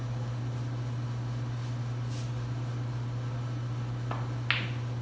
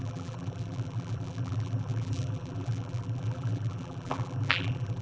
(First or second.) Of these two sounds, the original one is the first